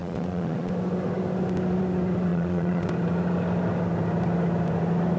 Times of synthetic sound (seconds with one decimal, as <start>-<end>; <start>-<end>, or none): 0.0-0.7; 2.3-2.9